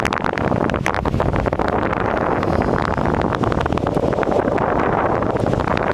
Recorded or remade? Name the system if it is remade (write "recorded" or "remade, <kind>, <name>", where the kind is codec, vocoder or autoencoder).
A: recorded